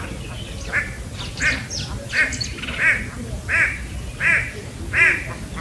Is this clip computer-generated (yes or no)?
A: no